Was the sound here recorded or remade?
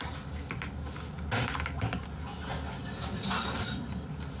recorded